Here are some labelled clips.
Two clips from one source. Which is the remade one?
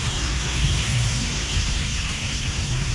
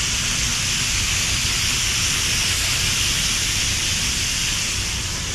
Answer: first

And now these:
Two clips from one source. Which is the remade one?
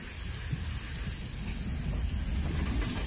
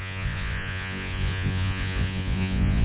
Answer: second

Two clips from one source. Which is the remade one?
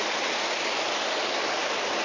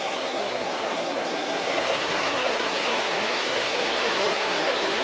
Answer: second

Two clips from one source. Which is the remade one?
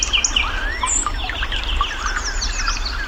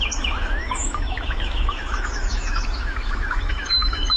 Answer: second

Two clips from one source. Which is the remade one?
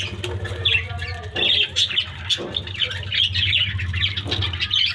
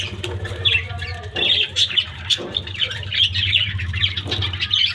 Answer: second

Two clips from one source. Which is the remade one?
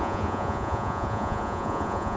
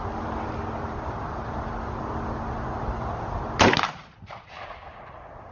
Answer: first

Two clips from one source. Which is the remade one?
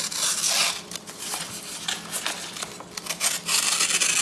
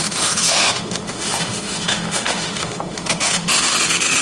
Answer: second